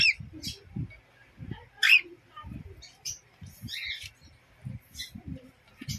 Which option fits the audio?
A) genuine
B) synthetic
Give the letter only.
A